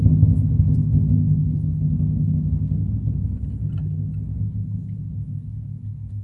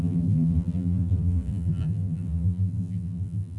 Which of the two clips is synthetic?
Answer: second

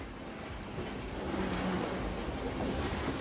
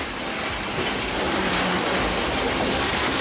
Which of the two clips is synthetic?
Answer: second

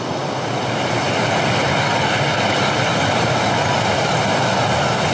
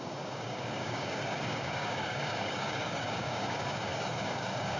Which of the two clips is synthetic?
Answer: second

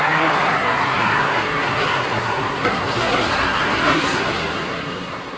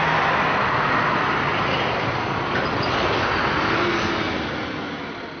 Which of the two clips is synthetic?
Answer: first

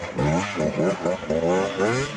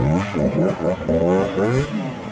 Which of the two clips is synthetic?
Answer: second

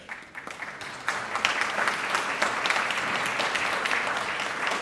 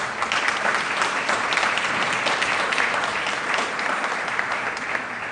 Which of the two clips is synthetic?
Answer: second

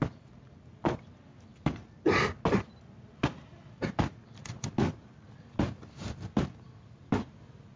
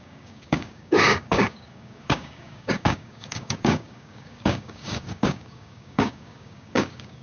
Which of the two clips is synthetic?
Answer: second